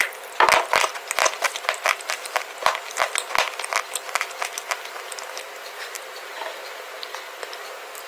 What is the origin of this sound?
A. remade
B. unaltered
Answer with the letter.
B